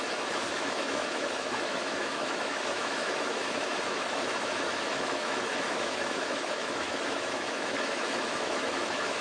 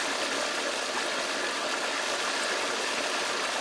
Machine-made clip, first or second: first